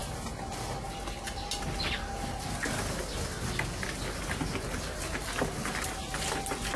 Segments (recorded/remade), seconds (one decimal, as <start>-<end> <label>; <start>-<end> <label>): 0.0-6.8 recorded